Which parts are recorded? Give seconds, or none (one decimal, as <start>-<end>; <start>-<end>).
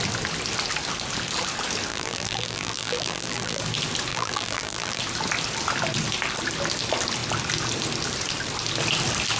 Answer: 0.0-1.9; 3.6-4.1; 5.0-9.4